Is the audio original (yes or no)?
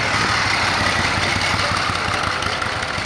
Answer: yes